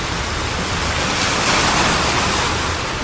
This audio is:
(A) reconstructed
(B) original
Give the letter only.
B